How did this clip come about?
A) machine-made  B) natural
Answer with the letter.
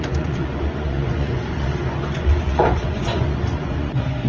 A